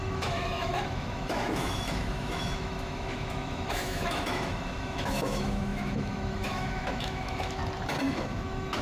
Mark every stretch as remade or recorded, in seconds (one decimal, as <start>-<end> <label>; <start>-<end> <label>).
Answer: 0.0-7.6 remade; 7.6-8.1 recorded; 8.1-8.8 remade